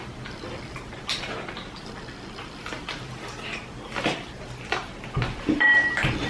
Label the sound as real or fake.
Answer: real